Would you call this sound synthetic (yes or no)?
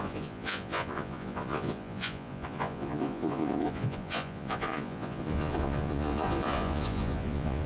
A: yes